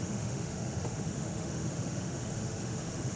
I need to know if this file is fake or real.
fake